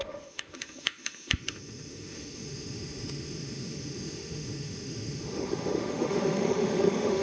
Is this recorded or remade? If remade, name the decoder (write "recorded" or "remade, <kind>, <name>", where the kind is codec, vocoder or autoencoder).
remade, autoencoder, DAC-VAE